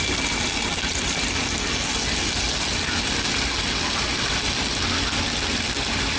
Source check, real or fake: real